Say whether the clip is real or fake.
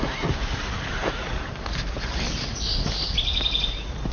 real